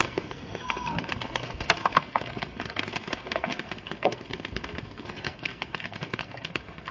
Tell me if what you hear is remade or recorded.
remade